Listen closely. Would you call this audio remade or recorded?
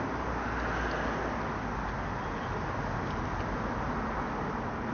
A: recorded